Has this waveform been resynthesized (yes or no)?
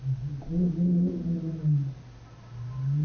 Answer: no